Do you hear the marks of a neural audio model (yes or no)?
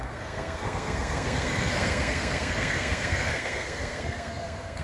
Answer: yes